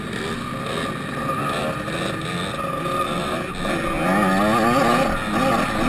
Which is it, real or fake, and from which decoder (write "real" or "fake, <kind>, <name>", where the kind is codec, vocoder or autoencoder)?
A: real